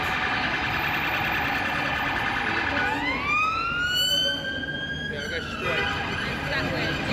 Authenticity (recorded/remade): recorded